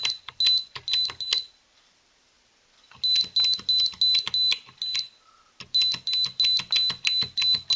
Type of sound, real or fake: real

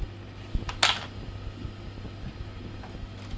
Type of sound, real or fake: real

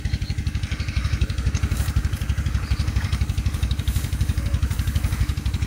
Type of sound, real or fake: fake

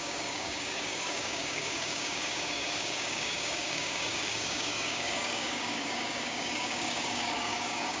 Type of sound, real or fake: fake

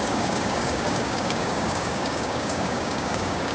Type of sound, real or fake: fake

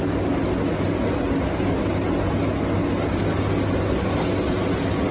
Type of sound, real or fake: real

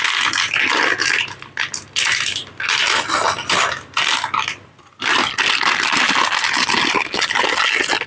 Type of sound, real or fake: real